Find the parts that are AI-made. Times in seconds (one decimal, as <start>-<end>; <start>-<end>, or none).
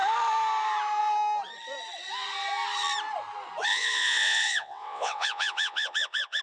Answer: 3.7-6.4